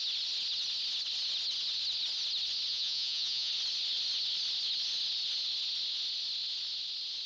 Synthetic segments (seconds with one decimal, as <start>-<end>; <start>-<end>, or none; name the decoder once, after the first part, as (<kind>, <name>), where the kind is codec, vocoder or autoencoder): 2.7-3.5 (vocoder, Vocos)